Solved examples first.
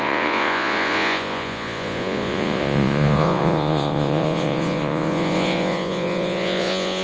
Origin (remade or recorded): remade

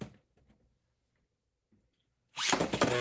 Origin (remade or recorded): recorded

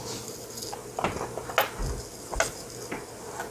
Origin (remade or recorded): recorded